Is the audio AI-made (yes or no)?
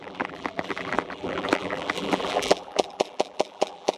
yes